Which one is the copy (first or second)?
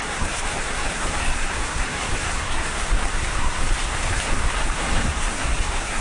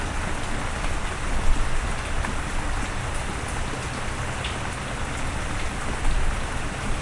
first